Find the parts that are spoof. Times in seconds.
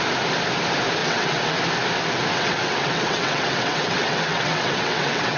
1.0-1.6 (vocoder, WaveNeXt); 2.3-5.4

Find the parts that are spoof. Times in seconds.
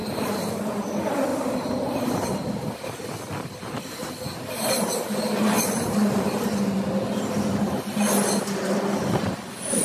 0.0-0.6 (vocoder, BigVGAN v2); 1.3-6.2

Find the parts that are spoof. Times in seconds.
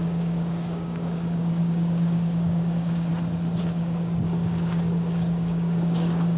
0.0-3.1 (codec, DAC); 3.6-6.4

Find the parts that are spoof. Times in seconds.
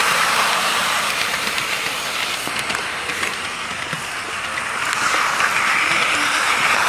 0.0-1.9 (vocoder, BigVGAN v2); 5.7-6.9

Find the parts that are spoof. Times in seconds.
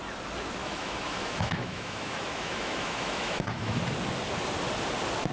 0.6-3.8 (autoencoder, DAC-VAE)